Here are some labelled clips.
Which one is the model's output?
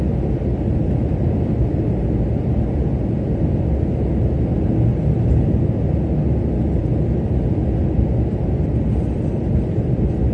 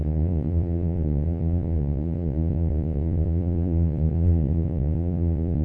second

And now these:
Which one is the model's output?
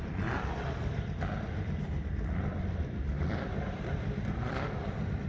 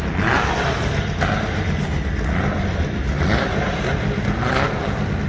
first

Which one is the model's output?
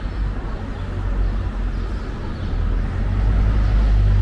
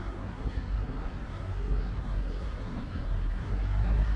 second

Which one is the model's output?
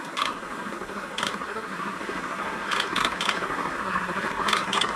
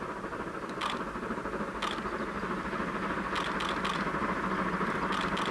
first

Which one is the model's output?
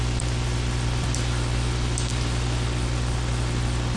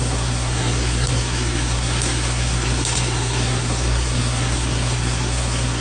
second